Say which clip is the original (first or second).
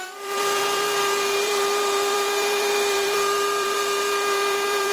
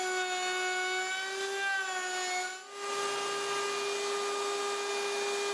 second